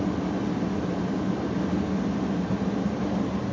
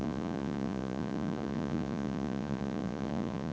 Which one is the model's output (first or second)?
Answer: second